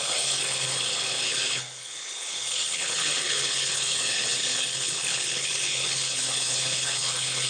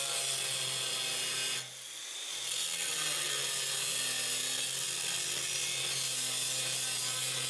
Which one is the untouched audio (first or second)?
second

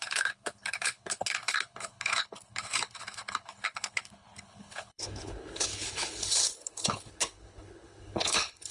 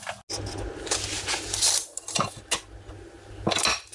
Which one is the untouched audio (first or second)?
second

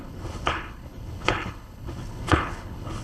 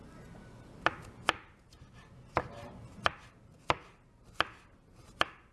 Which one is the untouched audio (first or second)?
second